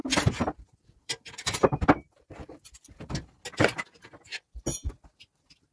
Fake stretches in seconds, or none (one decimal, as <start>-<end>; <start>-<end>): 0.0-3.4